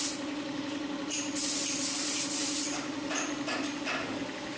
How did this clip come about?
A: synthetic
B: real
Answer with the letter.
B